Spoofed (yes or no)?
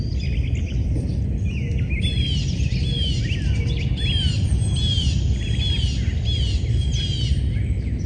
no